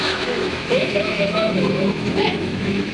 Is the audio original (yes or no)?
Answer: no